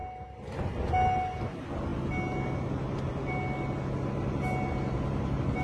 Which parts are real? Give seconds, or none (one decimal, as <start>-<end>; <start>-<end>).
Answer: 0.0-5.6